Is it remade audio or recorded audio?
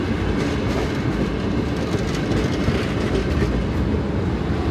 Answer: recorded